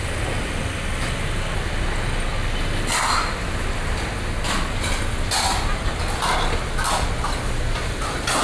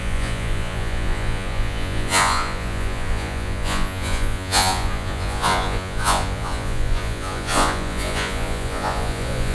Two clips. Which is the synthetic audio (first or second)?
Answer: second